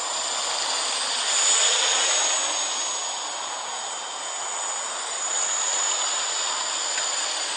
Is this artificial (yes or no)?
no